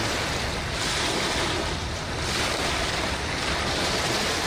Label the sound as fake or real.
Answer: real